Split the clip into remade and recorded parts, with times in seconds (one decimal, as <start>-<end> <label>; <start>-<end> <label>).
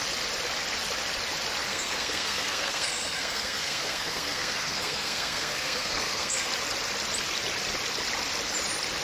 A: 0.0-1.7 recorded; 1.7-6.5 remade; 6.5-9.0 recorded